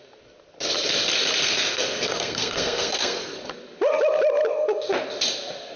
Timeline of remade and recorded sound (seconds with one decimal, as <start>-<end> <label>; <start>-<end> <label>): 0.0-1.4 recorded; 1.4-3.4 remade; 3.4-5.8 recorded